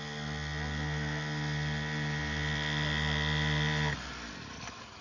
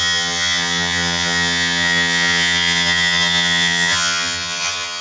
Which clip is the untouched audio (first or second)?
first